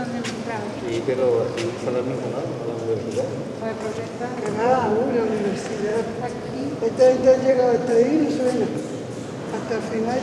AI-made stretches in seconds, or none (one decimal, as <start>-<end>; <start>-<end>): 4.3-4.9; 5.9-8.4